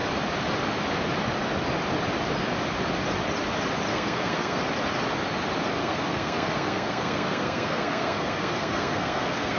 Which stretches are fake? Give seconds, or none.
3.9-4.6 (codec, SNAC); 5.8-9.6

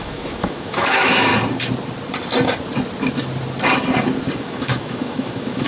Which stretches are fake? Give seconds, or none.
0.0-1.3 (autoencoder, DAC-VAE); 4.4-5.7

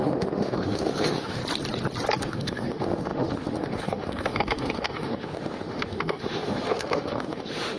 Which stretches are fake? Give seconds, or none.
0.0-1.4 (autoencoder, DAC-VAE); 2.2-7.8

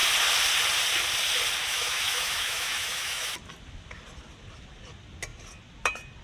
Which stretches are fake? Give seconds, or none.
1.6-3.3 (autoencoder, DAC-VAE)

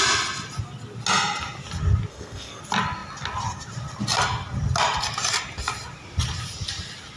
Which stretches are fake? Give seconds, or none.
2.1-2.6 (codec, SNAC)

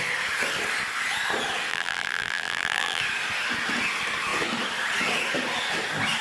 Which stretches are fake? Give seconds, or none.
1.7-3.0 (vocoder, BigVGAN v2)

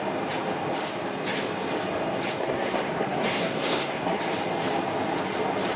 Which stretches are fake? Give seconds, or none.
2.3-4.2 (codec, SNAC)

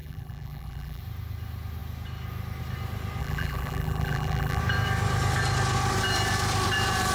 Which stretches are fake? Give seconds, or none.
0.0-1.0 (vocoder, BigVGAN v2); 3.2-4.6